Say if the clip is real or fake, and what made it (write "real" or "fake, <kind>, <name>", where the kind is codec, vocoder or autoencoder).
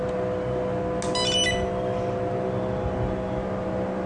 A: real